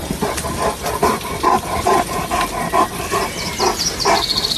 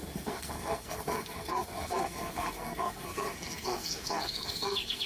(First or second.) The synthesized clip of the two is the second